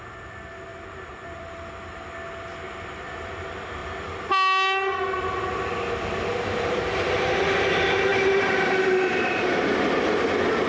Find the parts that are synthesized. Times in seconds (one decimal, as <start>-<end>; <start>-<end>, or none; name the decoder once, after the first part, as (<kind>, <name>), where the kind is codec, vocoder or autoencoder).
0.7-1.4 (vocoder, BigVGAN v2); 8.1-9.8